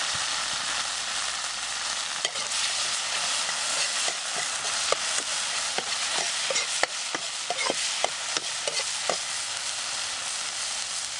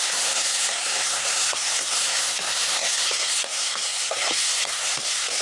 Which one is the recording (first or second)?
first